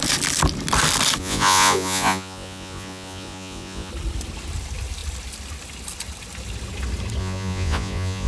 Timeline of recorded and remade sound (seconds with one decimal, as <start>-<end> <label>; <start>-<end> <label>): 0.0-1.2 recorded; 1.2-3.9 remade; 3.9-7.2 recorded; 7.2-8.3 remade